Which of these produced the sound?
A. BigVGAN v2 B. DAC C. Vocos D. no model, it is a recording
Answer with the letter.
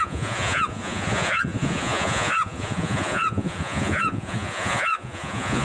C